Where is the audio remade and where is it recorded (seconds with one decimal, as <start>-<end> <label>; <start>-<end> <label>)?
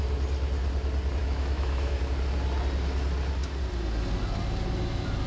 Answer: 0.0-1.2 recorded; 1.2-2.0 remade; 2.0-5.3 recorded